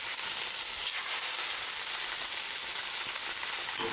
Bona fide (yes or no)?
yes